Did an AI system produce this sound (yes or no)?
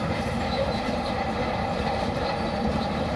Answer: yes